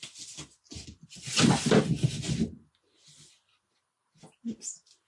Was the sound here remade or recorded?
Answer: recorded